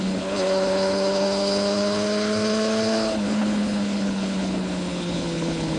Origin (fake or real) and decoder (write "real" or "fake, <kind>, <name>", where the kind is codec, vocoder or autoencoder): fake, codec, HILCodec